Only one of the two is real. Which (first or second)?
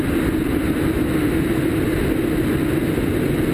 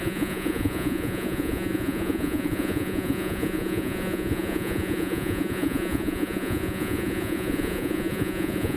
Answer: first